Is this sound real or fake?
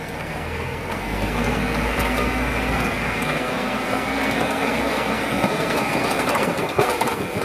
fake